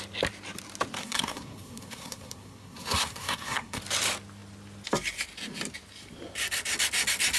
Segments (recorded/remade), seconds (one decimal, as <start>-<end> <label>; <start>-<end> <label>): 0.0-1.0 recorded; 1.0-3.8 remade; 3.8-7.4 recorded